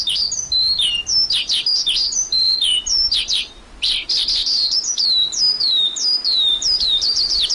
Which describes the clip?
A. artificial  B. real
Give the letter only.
A